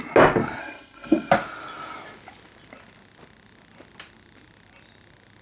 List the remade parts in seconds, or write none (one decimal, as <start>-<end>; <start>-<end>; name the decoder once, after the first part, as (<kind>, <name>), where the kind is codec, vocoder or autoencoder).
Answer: 0.6-1.3 (codec, SNAC)